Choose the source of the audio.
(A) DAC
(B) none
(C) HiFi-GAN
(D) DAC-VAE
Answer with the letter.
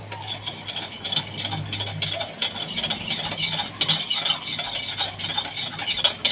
B